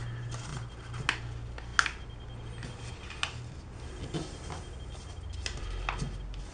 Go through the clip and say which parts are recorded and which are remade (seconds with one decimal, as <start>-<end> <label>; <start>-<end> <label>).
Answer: 0.0-6.5 recorded